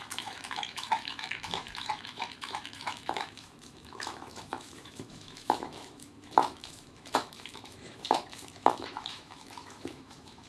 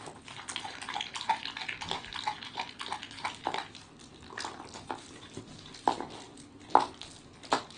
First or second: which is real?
second